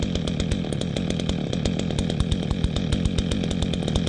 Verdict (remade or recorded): recorded